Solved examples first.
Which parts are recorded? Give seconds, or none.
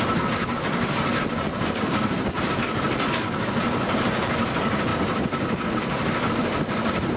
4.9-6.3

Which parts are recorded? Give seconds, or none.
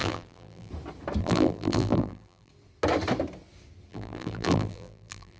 0.7-1.2; 2.5-3.9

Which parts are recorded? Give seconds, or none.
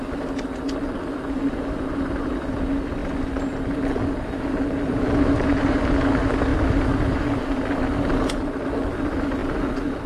0.0-10.1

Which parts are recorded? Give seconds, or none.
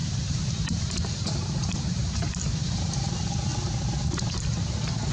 3.1-5.1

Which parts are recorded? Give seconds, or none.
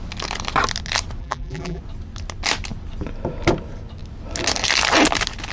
0.0-1.2; 1.8-5.5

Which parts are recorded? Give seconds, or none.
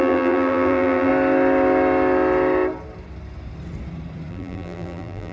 1.1-4.3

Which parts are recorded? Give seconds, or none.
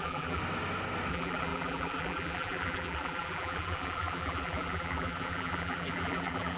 0.4-1.1